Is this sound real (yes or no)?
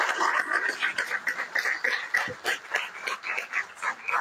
yes